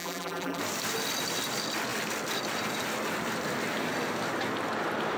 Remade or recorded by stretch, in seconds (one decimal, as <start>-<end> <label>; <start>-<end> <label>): 0.0-0.6 remade; 0.6-5.2 recorded